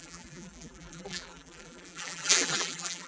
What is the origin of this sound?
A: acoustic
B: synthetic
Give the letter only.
B